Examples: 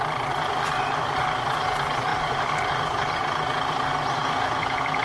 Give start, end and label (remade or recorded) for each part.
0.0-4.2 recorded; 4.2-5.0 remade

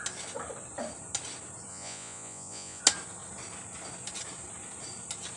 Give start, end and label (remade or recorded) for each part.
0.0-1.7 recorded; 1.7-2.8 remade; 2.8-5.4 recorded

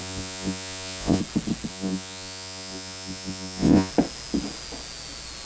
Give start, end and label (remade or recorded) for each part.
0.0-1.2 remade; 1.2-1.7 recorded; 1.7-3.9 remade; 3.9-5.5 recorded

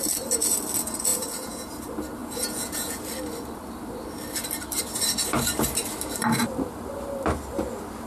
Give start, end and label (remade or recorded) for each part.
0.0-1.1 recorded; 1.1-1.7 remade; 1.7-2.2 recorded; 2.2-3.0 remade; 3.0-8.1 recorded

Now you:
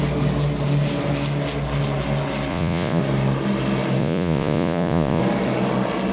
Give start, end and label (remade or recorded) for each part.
0.0-2.5 recorded; 2.5-3.0 remade; 3.0-4.0 recorded; 4.0-5.2 remade; 5.2-6.1 recorded

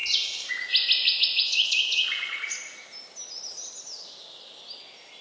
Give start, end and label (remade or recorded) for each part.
0.0-0.5 remade; 0.5-1.0 recorded; 1.0-2.8 remade; 2.8-5.2 recorded

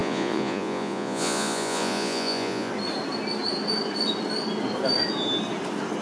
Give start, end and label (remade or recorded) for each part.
0.0-2.7 remade; 2.7-6.0 recorded

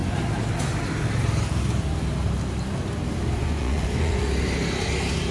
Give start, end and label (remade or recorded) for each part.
0.0-3.4 recorded; 3.4-4.3 remade; 4.3-5.3 recorded